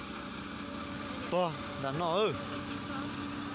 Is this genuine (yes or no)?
yes